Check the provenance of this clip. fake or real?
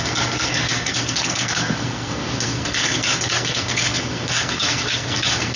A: fake